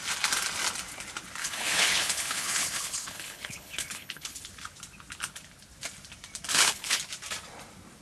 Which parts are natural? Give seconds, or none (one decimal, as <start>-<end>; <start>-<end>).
0.0-1.4; 4.4-6.5; 7.0-8.0